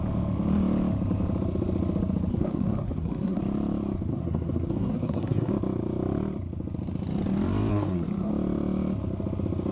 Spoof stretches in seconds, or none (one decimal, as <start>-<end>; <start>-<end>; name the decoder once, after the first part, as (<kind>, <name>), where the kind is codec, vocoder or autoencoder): 2.3-3.4 (codec, SNAC); 4.1-5.5; 7.7-8.3